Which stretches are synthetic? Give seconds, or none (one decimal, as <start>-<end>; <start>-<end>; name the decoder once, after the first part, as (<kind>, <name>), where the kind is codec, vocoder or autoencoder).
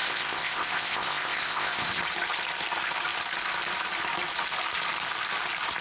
0.0-2.0 (codec, ZipCodec)